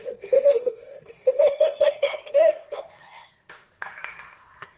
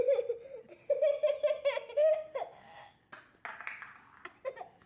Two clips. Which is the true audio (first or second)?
second